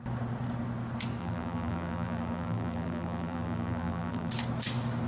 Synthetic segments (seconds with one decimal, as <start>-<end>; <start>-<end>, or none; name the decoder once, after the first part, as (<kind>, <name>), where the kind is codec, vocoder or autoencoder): 1.2-4.3 (vocoder, BigVGAN v2)